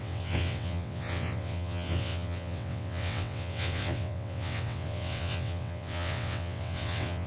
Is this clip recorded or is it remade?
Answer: remade